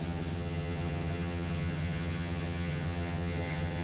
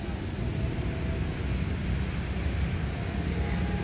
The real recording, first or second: second